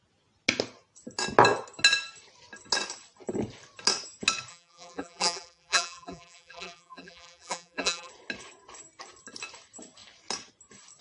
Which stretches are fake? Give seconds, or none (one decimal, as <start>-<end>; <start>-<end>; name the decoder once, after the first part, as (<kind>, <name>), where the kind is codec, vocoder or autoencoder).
4.5-8.1 (vocoder, BigVGAN v2)